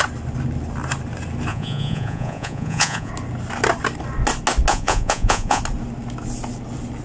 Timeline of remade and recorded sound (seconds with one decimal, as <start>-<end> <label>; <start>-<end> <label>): 0.0-1.5 recorded; 1.5-3.1 remade; 3.1-4.7 recorded; 4.7-5.6 remade; 5.6-7.0 recorded